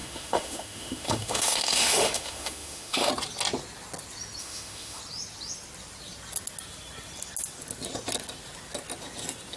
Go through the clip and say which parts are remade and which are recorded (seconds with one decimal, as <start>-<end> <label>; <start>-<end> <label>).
0.0-3.1 remade; 3.1-4.4 recorded; 4.4-5.0 remade; 5.0-9.6 recorded